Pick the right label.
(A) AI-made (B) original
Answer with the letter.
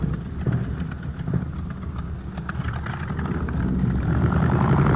B